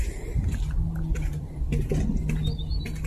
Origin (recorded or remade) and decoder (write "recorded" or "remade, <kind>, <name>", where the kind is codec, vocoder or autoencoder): recorded